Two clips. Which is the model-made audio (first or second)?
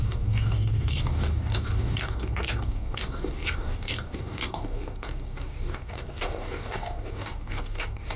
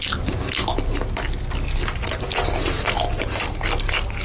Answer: first